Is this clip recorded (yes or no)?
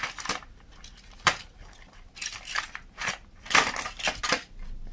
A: yes